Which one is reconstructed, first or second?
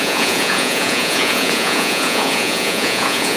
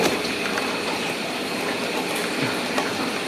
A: first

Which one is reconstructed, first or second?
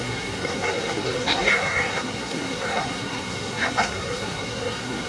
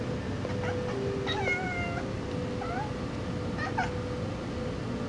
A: first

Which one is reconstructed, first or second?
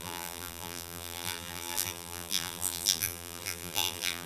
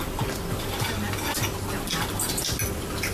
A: first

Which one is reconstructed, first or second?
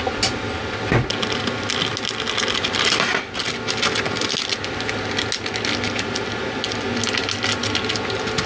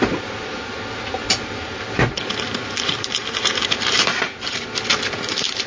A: second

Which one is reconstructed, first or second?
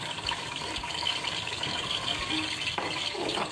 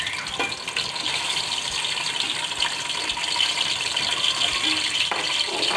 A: first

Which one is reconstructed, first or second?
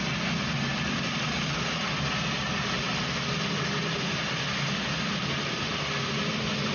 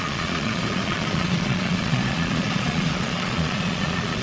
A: second